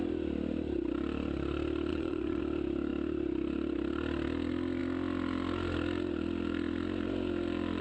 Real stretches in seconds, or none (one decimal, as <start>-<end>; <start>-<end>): 0.0-1.9; 2.4-7.8